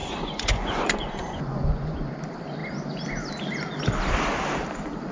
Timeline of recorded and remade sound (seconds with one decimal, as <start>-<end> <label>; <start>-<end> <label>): 0.0-2.1 remade; 2.1-5.1 recorded